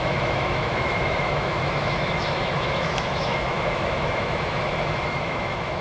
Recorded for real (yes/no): no